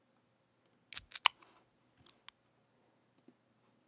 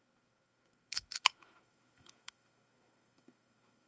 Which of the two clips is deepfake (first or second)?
second